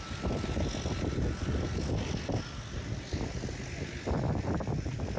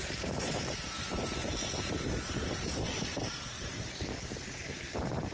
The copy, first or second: second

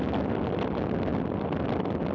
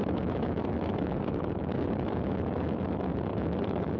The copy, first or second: second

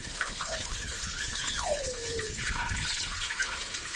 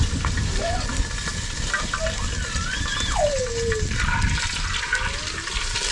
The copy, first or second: first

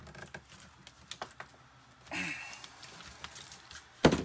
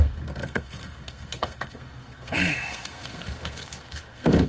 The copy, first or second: second